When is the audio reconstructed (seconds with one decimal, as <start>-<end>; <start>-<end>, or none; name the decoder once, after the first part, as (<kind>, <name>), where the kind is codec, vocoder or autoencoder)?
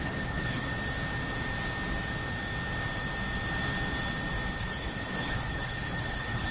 0.0-0.7 (codec, HILCodec); 4.6-6.5